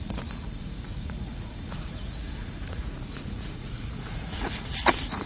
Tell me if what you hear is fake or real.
fake